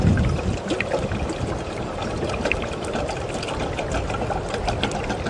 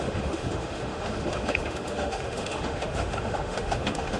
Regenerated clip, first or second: second